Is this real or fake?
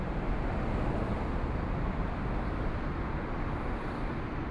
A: real